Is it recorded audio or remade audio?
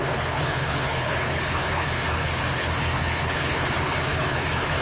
remade